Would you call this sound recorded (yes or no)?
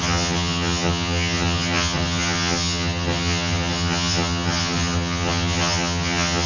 no